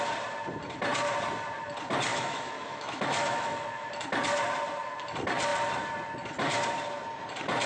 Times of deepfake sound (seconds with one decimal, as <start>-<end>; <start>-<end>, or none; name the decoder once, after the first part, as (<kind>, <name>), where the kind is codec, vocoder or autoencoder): 2.1-3.9 (autoencoder, DAC-VAE)